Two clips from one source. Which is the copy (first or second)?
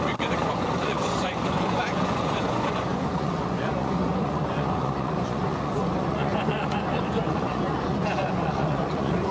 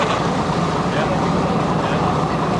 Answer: first